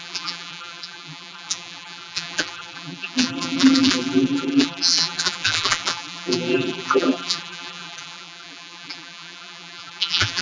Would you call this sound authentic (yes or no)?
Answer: no